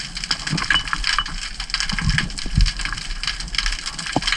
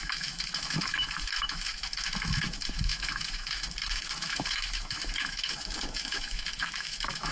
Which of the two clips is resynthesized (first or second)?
second